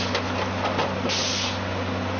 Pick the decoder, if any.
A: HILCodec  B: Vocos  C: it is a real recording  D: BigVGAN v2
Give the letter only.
C